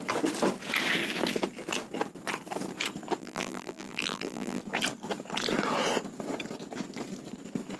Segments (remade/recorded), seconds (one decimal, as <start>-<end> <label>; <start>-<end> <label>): 0.0-3.2 recorded; 3.2-4.6 remade; 4.6-7.8 recorded